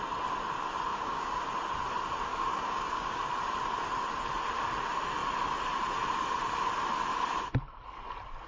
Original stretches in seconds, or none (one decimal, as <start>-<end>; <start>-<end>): 0.0-0.9; 1.4-2.3; 3.2-8.5